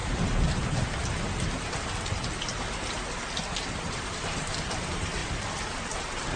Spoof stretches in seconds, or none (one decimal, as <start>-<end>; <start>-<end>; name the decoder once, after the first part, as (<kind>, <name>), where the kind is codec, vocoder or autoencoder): 3.8-5.2 (vocoder, BigVGAN v2); 6.0-6.4